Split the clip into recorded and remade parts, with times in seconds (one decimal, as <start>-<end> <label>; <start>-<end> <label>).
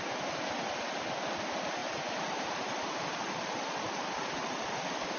0.0-1.8 recorded; 1.8-5.2 remade